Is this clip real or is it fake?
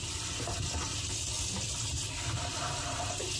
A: fake